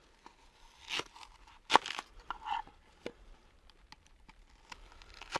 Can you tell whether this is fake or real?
real